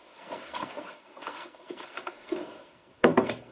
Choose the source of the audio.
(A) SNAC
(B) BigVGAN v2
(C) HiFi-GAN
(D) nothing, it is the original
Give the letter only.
A